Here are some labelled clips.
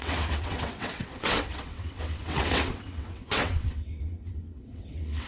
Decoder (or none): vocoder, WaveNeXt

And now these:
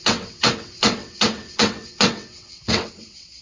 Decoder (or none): vocoder, WaveNeXt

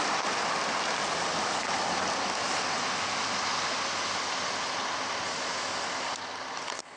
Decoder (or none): none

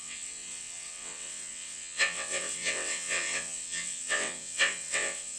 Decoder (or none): vocoder, WaveNeXt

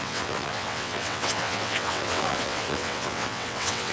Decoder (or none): vocoder, WaveNeXt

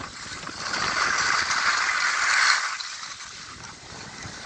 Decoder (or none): none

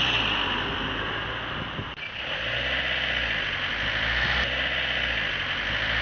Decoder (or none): none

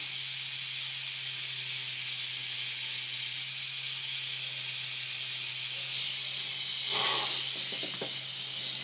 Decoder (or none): none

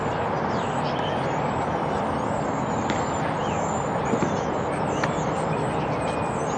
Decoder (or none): none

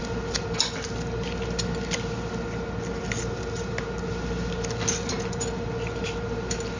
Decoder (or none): none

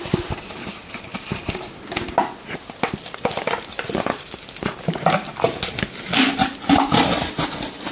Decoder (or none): none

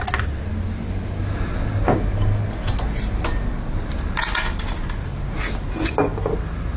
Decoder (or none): none